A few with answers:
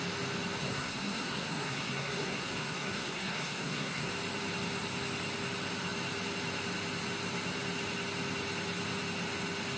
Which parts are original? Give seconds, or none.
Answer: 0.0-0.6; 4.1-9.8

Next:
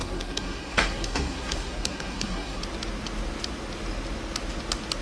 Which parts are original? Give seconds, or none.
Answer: 2.6-5.0

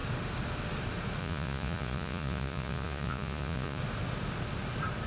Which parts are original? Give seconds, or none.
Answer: 0.0-1.2; 3.8-5.1

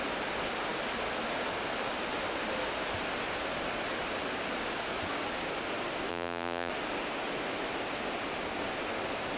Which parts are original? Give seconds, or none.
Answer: 0.0-6.1; 6.7-9.4

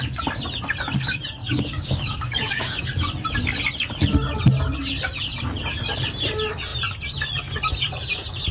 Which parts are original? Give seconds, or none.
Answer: 0.0-1.4; 2.7-8.5

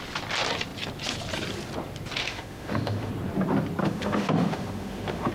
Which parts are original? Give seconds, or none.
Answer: 0.0-2.2; 3.1-3.8

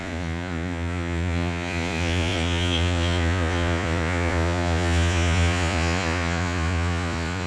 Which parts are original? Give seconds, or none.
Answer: none